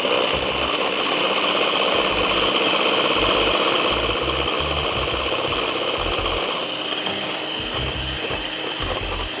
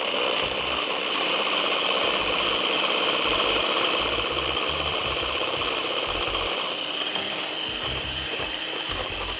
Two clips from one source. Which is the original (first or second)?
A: first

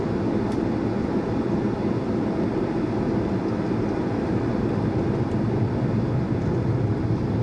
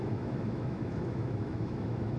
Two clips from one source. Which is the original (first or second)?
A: first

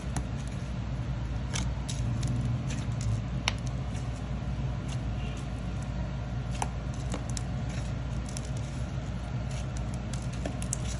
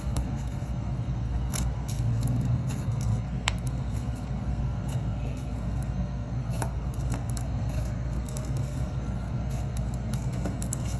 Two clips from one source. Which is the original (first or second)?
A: first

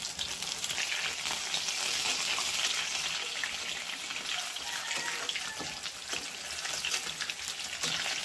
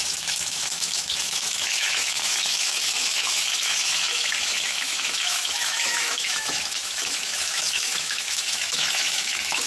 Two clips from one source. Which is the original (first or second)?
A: first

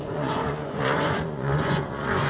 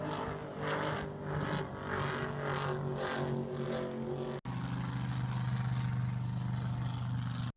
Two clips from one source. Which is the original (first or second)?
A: second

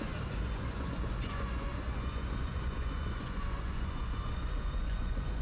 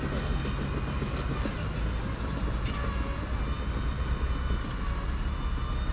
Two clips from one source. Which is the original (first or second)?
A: second